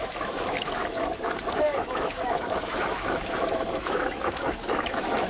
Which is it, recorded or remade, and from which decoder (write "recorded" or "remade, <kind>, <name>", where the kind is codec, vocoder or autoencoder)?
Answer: remade, autoencoder, DAC-VAE